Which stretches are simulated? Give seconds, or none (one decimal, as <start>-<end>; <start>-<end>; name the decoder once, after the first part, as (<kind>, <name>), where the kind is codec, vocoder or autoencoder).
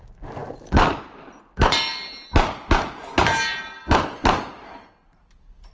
none